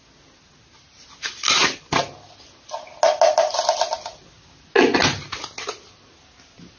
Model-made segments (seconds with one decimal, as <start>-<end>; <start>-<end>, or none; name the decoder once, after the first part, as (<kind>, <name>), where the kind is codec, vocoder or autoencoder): none